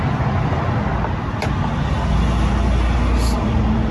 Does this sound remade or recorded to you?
recorded